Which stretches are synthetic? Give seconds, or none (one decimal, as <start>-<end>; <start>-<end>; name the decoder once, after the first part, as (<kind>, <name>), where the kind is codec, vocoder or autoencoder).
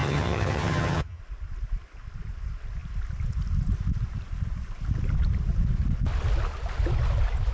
0.0-1.2 (vocoder, HiFi-GAN)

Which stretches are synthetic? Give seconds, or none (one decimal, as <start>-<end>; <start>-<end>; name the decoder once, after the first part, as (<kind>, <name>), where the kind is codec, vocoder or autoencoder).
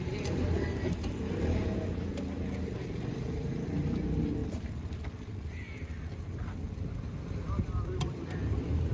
none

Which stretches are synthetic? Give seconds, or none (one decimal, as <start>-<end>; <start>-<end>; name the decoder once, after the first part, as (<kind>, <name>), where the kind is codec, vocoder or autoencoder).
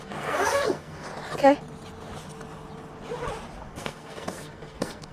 0.0-1.1 (codec, SNAC); 3.7-5.1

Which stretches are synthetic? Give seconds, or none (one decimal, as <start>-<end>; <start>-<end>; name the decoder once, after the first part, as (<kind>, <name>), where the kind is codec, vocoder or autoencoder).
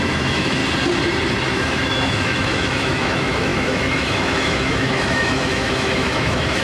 0.0-0.6 (autoencoder, DAC-VAE); 1.5-6.6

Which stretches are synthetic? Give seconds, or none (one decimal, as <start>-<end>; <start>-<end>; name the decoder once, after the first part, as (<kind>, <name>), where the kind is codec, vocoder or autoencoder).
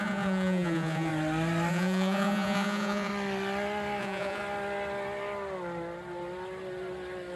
0.0-1.1 (vocoder, Vocos); 1.7-3.1; 4.0-4.4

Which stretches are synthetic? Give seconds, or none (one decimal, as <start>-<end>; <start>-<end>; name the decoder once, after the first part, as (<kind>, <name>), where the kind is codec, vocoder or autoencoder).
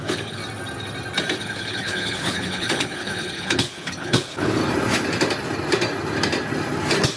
0.0-0.4 (codec, HILCodec); 1.4-4.6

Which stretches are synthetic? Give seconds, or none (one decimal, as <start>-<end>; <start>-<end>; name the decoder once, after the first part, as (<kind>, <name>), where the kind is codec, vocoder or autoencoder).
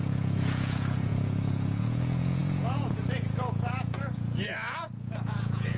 0.0-5.8 (vocoder, Vocos)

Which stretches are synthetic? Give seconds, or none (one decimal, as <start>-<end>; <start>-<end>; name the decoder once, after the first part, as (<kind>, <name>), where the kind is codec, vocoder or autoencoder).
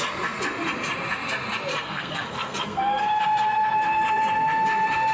1.7-3.2 (codec, SNAC)